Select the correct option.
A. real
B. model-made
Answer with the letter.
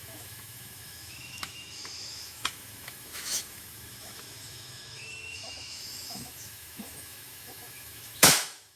B